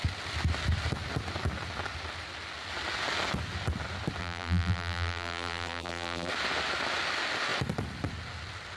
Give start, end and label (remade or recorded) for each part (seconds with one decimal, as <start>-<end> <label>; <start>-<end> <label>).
0.0-4.2 recorded; 4.2-6.3 remade; 6.3-8.8 recorded